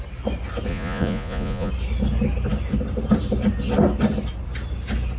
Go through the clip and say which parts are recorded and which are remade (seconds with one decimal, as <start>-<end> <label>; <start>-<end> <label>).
0.0-0.7 recorded; 0.7-1.7 remade; 1.7-5.2 recorded